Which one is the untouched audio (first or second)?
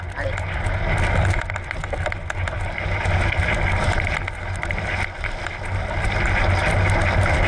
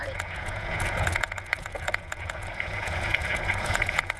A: first